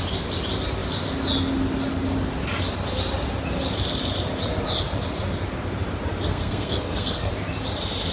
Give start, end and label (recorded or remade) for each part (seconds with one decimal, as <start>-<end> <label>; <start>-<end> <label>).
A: 0.0-6.2 recorded; 6.2-7.3 remade; 7.3-8.1 recorded